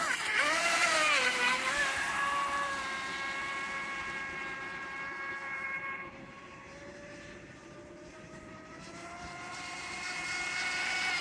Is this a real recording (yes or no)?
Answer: no